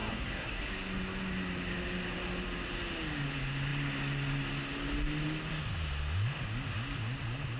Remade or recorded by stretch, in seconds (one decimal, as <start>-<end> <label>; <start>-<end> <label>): 0.0-0.6 remade; 0.6-7.6 recorded